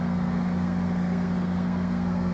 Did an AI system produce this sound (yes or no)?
yes